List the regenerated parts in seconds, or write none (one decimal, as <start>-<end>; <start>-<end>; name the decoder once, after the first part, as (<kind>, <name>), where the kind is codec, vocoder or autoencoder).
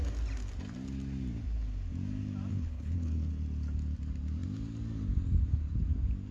2.5-3.3 (codec, HILCodec)